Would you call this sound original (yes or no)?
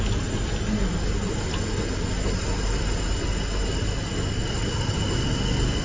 yes